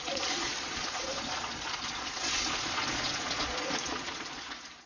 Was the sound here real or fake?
fake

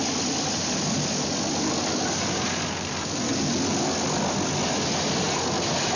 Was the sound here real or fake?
real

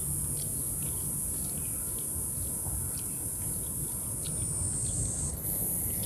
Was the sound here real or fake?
real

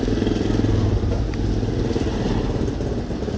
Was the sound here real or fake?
real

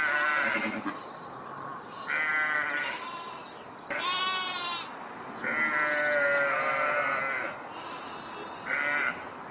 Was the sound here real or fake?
real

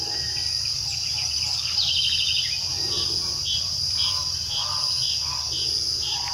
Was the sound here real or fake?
real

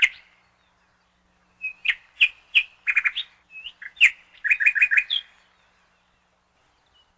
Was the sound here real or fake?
real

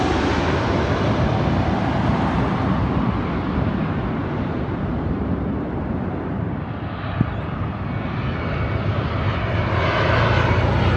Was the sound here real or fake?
real